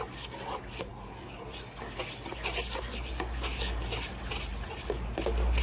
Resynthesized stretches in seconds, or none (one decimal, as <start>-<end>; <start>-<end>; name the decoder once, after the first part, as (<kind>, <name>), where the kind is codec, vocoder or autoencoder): none